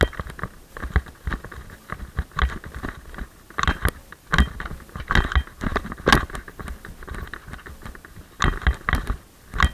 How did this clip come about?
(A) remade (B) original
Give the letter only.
B